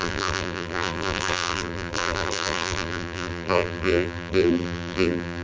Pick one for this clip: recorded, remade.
remade